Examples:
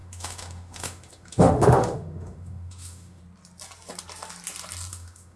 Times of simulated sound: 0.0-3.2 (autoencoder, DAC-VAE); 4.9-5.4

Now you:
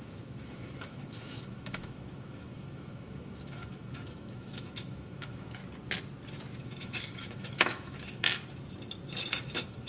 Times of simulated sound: 0.0-5.6 (autoencoder, DAC-VAE); 6.6-8.4; 9.3-9.9

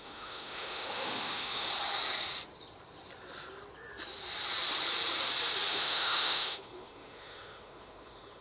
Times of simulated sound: 0.0-1.7 (autoencoder, DAC-VAE); 5.7-8.4

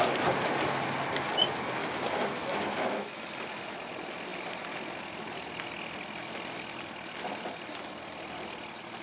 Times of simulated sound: 1.8-3.2 (autoencoder, DAC-VAE)

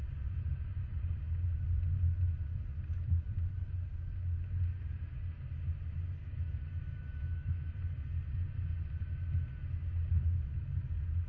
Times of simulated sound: 6.2-7.7 (autoencoder, DAC-VAE)

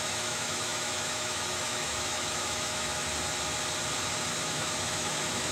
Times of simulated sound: 0.0-3.1 (autoencoder, DAC-VAE); 4.3-5.5